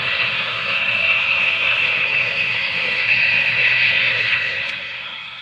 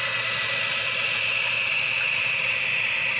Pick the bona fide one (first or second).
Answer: second